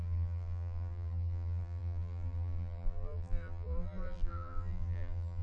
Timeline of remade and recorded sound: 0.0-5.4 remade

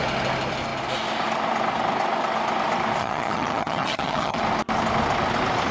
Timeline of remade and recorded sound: 0.0-3.0 recorded; 3.0-4.4 remade; 4.4-5.7 recorded

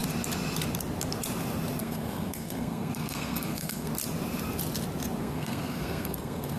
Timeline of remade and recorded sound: 0.0-1.8 recorded; 1.8-3.9 remade; 3.9-5.2 recorded; 5.2-6.6 remade

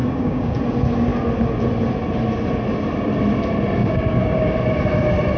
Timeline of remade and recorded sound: 0.0-0.6 remade; 0.6-3.8 recorded; 3.8-4.5 remade; 4.5-5.4 recorded

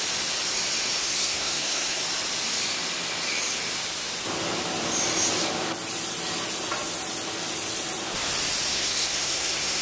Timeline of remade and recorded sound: 0.0-1.0 recorded; 1.0-2.0 remade; 2.0-8.7 recorded; 8.7-9.8 remade

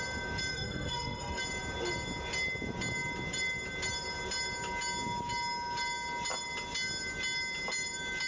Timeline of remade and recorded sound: 0.0-0.5 recorded; 0.5-1.4 remade; 1.4-8.3 recorded

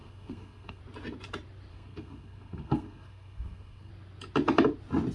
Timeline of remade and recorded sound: 0.0-0.8 remade; 0.8-1.7 recorded; 1.7-3.9 remade; 3.9-5.1 recorded

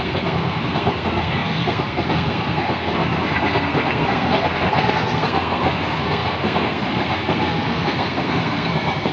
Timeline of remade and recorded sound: 0.0-9.1 remade